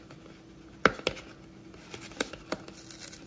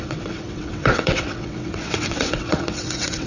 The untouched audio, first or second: first